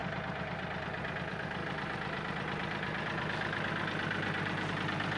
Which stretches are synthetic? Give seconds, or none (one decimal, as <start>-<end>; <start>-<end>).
none